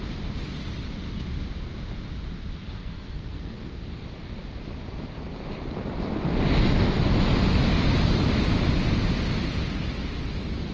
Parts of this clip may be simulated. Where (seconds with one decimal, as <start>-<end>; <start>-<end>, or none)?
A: 2.6-3.8